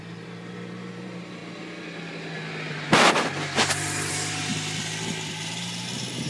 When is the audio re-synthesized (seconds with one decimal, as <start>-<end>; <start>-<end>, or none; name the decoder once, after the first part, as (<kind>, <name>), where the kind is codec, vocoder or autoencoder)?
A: 0.0-1.4 (vocoder, BigVGAN v2); 4.1-4.5; 5.3-6.3